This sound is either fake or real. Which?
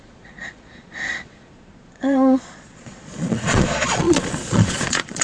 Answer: fake